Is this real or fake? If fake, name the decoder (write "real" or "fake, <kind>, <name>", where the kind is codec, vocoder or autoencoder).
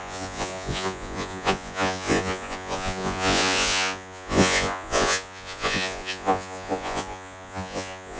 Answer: fake, vocoder, Vocos